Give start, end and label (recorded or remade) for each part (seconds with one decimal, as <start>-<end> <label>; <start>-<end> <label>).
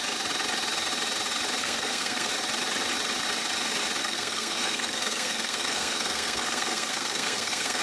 0.0-1.6 recorded; 1.6-2.3 remade; 2.3-4.0 recorded; 4.0-7.8 remade